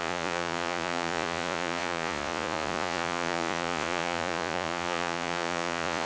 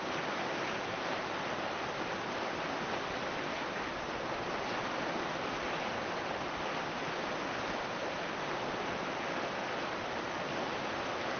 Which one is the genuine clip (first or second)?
second